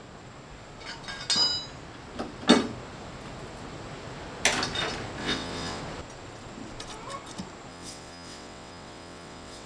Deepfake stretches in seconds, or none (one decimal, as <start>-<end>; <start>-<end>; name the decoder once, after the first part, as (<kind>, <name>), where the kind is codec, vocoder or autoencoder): 5.2-5.8 (vocoder, WaveNeXt); 7.7-9.7